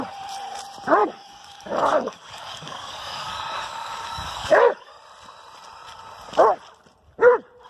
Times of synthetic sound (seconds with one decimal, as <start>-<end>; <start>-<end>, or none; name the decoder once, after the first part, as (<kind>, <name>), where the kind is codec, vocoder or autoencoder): 1.0-4.9 (codec, DAC)